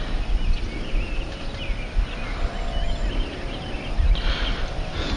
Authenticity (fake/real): real